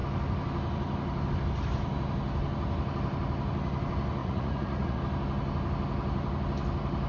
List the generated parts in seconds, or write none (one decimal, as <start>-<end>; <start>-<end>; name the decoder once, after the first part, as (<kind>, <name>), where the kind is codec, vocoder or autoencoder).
4.2-5.0 (vocoder, Vocos)